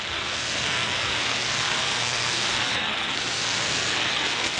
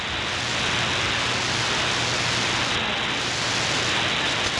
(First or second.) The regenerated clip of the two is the first